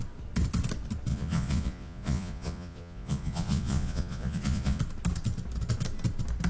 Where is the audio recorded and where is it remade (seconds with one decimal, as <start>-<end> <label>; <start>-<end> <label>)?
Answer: 0.0-1.1 recorded; 1.1-4.8 remade; 4.8-6.5 recorded